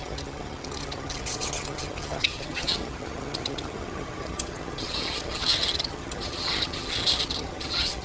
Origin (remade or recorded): remade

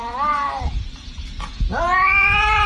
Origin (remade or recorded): remade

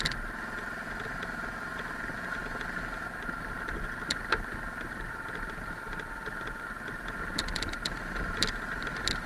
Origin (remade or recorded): recorded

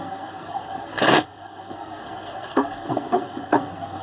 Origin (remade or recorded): remade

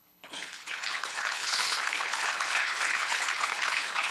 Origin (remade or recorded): remade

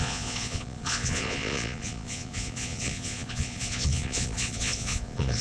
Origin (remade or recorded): remade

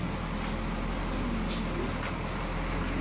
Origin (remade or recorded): recorded